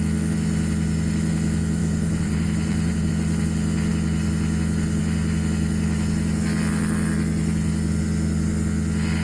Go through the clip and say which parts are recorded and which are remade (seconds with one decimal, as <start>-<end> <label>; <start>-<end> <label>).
0.0-1.8 recorded; 1.8-3.1 remade; 3.1-9.2 recorded